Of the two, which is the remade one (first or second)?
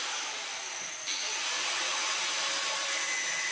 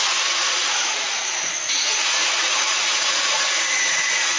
second